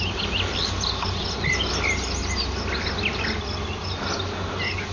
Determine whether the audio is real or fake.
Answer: real